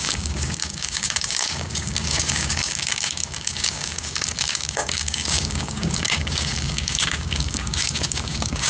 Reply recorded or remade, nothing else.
remade